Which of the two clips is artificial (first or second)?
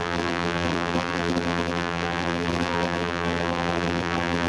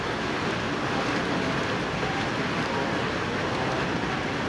first